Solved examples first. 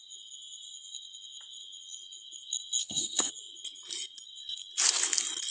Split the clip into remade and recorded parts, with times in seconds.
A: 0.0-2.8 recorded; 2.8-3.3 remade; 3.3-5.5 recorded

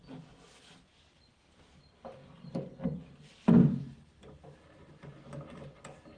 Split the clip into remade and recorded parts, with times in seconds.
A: 0.0-6.2 recorded

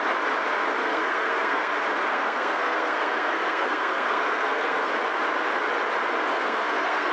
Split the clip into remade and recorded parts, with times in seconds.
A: 0.0-0.8 recorded; 0.8-1.7 remade; 1.7-2.1 recorded; 2.1-4.9 remade; 4.9-6.3 recorded; 6.3-7.1 remade

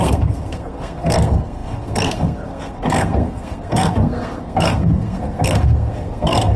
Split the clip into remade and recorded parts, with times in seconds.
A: 0.0-6.6 remade

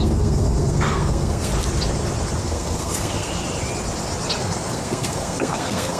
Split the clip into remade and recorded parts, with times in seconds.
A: 0.0-1.5 remade; 1.5-2.4 recorded; 2.4-3.3 remade; 3.3-4.4 recorded; 4.4-6.0 remade